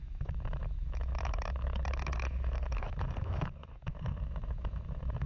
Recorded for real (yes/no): no